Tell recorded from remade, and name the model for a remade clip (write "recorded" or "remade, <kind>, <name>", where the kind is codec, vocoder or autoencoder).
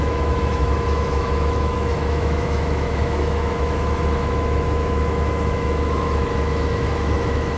remade, autoencoder, DAC-VAE